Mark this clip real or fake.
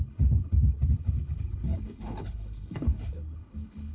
fake